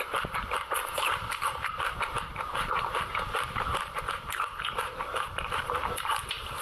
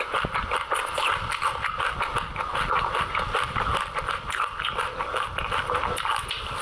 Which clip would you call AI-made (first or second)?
first